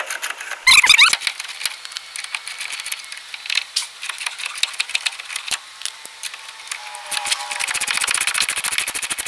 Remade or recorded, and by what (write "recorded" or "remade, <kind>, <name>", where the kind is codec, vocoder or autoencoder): recorded